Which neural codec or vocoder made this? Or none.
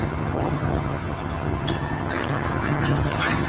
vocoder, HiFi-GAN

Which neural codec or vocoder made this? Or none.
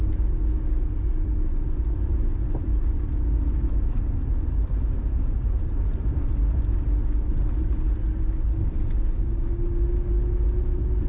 none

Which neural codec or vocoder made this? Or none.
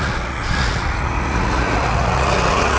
vocoder, Vocos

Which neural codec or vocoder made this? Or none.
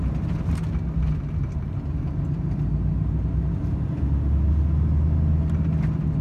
none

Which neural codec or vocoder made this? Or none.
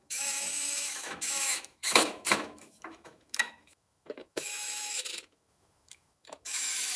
autoencoder, DAC-VAE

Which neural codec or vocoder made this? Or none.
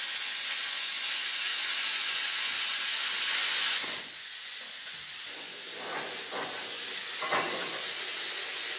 vocoder, Vocos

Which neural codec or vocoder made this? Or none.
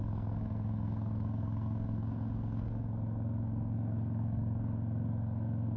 codec, SNAC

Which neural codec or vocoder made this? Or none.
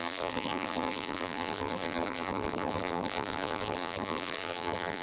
vocoder, BigVGAN v2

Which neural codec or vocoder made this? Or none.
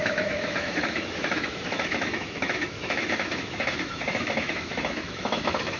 autoencoder, DAC-VAE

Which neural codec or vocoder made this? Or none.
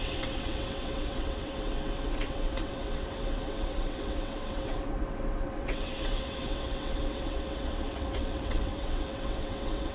vocoder, WaveNeXt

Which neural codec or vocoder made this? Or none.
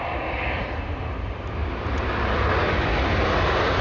none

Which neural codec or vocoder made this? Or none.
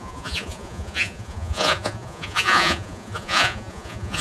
vocoder, Vocos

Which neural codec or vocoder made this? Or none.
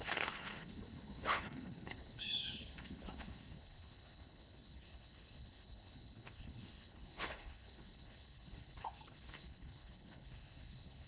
codec, HILCodec